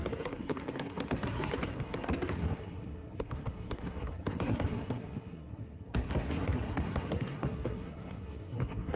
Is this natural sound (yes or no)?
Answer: no